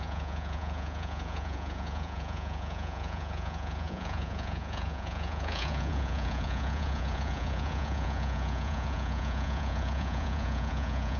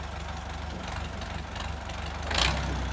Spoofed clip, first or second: first